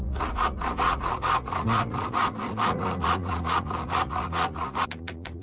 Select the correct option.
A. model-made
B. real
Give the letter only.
A